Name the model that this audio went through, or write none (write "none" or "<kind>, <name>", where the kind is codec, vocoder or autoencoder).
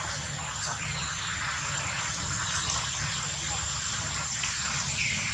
none